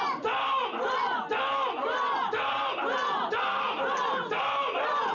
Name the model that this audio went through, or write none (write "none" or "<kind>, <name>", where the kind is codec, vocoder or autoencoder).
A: none